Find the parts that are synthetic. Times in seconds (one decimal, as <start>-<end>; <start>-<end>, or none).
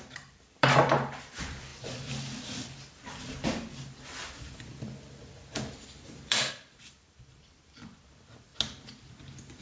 0.0-1.7; 6.5-8.5